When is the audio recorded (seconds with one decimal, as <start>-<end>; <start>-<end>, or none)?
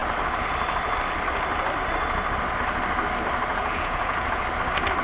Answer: 0.0-3.6; 4.4-5.0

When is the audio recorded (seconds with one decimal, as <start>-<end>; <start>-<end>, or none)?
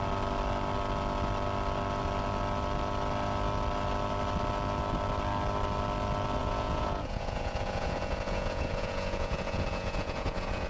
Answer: 0.0-6.4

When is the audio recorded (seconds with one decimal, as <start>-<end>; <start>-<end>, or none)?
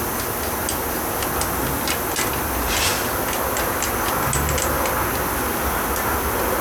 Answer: 0.0-6.6